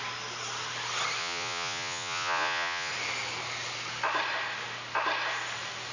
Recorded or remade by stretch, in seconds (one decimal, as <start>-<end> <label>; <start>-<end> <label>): 0.0-1.2 recorded; 1.2-2.9 remade; 2.9-5.9 recorded